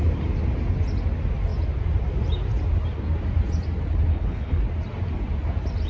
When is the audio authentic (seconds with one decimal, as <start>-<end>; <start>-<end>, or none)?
0.0-4.1; 4.6-5.9